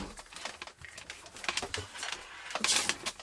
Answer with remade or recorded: recorded